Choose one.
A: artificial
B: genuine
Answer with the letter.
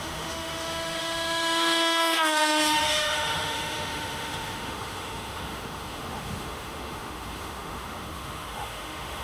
A